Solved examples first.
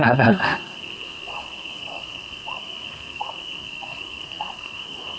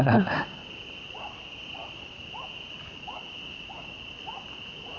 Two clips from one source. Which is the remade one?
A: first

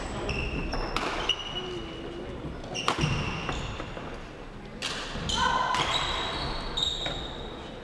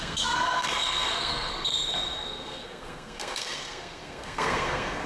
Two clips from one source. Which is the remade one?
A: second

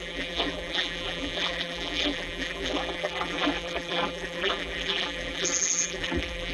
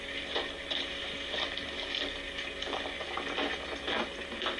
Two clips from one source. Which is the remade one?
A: first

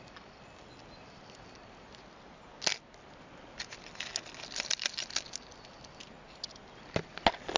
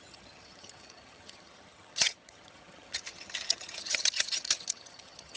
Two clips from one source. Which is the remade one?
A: second